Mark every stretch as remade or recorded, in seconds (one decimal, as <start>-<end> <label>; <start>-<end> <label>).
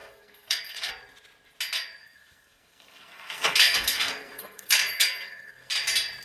0.0-0.9 remade; 0.9-2.0 recorded; 2.0-5.7 remade; 5.7-6.2 recorded